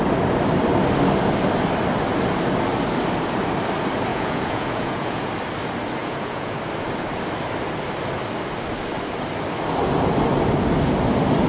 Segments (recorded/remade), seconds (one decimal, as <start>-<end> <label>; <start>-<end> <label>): 0.0-4.1 recorded; 4.1-5.3 remade; 5.3-6.0 recorded; 6.0-6.6 remade; 6.6-11.5 recorded